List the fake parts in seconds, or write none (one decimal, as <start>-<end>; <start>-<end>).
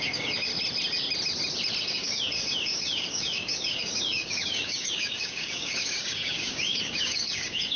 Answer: 0.0-0.5; 1.8-7.8